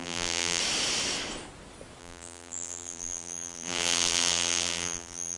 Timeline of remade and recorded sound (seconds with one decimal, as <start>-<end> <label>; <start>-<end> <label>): 0.0-0.6 remade; 0.6-2.0 recorded; 2.0-5.4 remade